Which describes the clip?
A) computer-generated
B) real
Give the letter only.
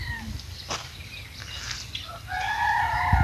B